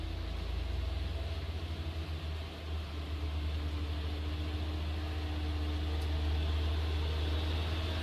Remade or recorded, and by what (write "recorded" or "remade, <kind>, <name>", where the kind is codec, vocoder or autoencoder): recorded